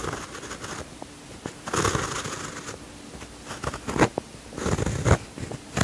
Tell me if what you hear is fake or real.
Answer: real